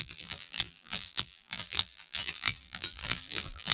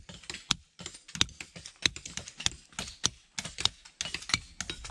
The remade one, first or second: first